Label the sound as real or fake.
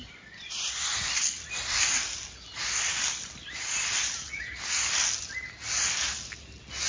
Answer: real